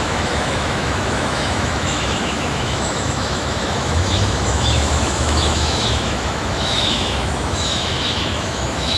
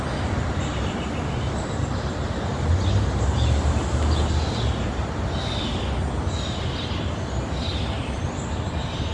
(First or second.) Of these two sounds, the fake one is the first